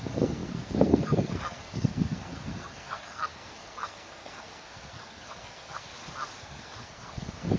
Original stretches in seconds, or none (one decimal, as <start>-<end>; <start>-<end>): 5.9-6.4